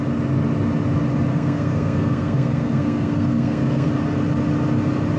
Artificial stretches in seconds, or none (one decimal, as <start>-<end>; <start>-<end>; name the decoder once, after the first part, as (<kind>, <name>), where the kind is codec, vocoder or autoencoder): 1.3-3.9 (codec, SNAC)